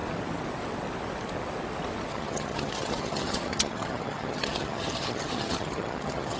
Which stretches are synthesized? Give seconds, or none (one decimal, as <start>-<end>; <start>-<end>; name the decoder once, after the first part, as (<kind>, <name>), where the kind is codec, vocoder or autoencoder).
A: 2.1-6.4 (vocoder, HiFi-GAN)

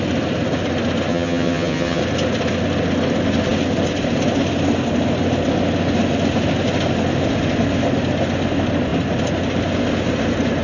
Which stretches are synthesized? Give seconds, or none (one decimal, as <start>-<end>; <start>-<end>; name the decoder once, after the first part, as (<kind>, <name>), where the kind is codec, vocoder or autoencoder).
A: 1.1-2.0 (vocoder, HiFi-GAN)

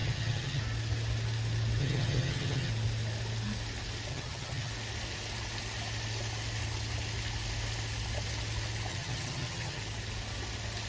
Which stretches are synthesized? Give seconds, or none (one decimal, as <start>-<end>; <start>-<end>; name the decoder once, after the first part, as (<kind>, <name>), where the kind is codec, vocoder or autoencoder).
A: 0.0-0.6 (vocoder, HiFi-GAN); 1.8-2.7; 4.1-4.7; 8.9-9.8

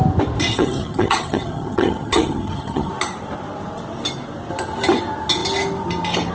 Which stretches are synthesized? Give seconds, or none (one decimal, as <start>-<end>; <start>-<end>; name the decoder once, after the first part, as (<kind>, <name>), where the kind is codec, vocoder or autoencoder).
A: 0.5-2.9 (vocoder, HiFi-GAN)

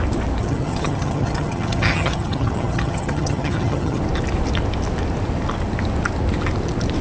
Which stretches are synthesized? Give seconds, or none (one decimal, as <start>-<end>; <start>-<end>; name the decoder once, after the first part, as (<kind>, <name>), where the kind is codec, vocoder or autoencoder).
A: 0.4-4.0 (vocoder, HiFi-GAN)

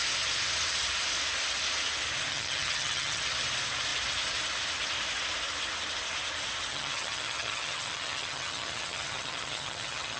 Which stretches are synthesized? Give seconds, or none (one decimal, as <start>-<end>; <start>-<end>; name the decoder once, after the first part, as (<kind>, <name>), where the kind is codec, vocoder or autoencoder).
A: 2.3-3.2 (vocoder, HiFi-GAN); 6.7-10.2

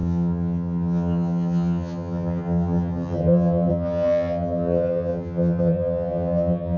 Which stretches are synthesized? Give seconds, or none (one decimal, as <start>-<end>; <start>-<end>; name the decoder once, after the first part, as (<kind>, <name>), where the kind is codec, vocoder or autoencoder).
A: 0.0-6.8 (vocoder, HiFi-GAN)

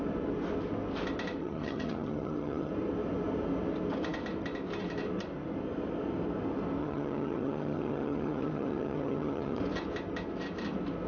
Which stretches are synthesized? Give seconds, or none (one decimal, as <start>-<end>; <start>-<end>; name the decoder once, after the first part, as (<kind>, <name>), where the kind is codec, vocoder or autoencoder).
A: 1.4-2.7 (vocoder, HiFi-GAN); 6.8-9.6